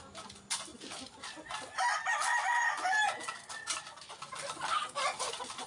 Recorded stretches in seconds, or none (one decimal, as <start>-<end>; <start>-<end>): 0.0-5.7